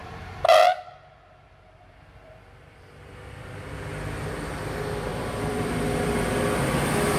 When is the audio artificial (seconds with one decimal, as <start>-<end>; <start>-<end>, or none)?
0.0-4.3; 5.1-6.1